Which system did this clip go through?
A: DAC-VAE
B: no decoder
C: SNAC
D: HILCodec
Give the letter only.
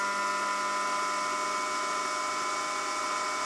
B